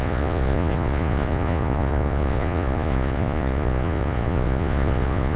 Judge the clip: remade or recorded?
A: remade